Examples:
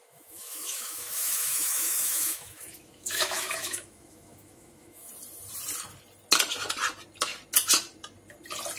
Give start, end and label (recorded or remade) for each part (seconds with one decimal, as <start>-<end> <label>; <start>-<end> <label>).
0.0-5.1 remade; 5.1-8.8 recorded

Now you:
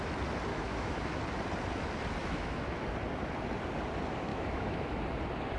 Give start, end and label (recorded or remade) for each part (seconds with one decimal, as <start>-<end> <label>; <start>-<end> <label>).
0.0-0.5 recorded; 0.5-1.2 remade; 1.2-2.2 recorded; 2.2-2.8 remade; 2.8-4.3 recorded; 4.3-4.9 remade; 4.9-5.6 recorded

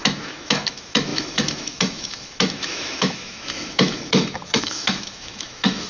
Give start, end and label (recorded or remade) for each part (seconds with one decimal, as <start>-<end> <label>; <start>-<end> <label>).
0.0-5.9 remade

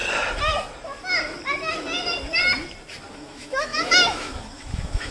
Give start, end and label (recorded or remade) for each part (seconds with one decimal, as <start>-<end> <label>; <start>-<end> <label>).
0.0-3.1 recorded; 3.1-5.1 remade